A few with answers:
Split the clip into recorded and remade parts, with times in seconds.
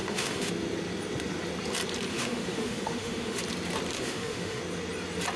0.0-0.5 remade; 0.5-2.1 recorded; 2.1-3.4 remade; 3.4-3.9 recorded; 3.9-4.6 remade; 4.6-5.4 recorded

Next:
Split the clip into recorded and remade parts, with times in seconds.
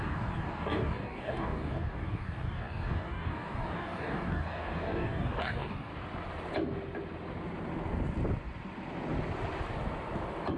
0.0-5.9 remade; 5.9-10.6 recorded